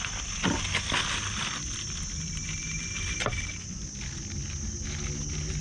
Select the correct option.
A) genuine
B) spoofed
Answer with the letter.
A